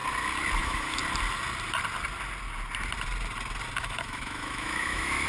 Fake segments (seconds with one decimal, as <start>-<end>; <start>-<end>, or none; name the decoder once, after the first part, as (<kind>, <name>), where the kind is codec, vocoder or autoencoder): 0.6-1.0 (autoencoder, DAC-VAE); 3.8-5.3